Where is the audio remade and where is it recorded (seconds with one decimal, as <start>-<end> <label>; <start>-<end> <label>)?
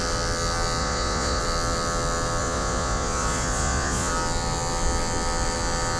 0.0-0.8 recorded; 0.8-1.4 remade; 1.4-2.4 recorded; 2.4-4.1 remade; 4.1-6.0 recorded